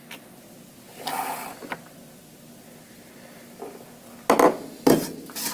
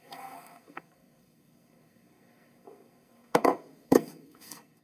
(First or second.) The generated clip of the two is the second